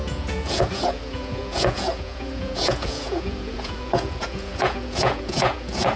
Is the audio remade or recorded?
remade